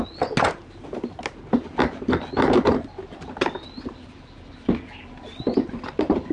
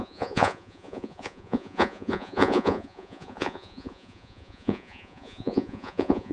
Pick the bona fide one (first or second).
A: first